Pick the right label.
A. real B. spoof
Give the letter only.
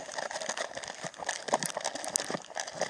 A